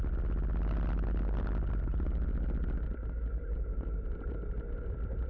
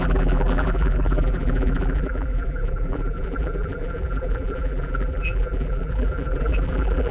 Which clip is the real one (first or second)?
first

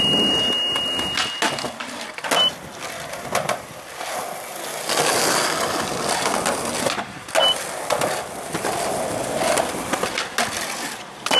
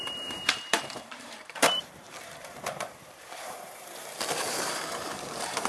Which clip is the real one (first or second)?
first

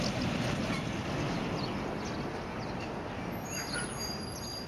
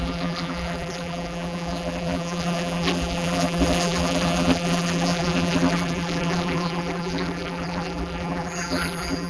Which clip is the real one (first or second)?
first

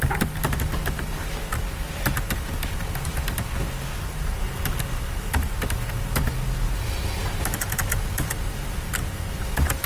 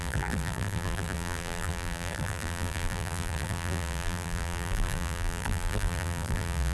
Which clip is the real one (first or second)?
first